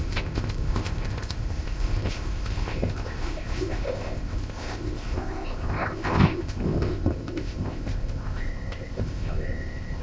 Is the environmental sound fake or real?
fake